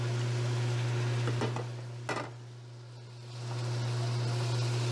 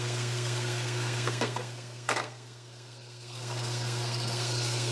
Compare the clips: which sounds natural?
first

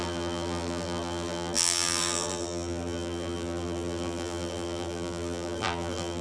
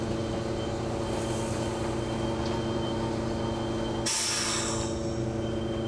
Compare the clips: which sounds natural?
second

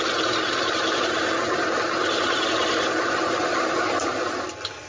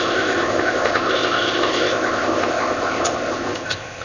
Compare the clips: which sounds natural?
first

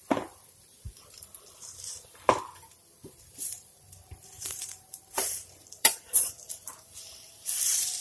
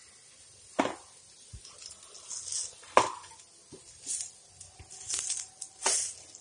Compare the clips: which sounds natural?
second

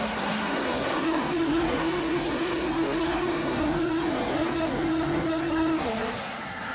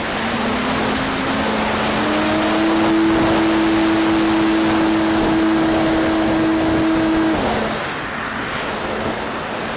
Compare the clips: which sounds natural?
second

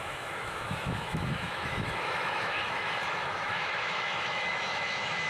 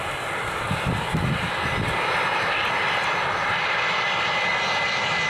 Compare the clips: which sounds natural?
second